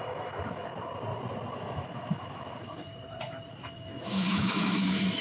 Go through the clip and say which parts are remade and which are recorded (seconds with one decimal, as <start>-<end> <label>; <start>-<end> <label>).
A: 0.0-0.7 remade; 0.7-1.5 recorded; 1.5-2.9 remade; 2.9-3.5 recorded; 3.5-5.2 remade